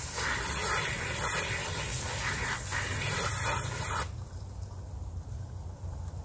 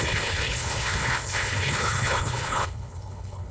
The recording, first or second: first